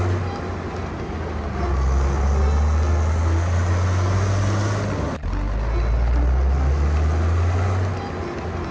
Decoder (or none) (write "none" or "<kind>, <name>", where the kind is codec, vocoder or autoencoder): none